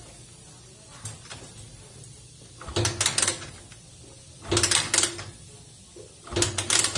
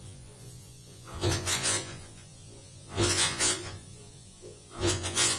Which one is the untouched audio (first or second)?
first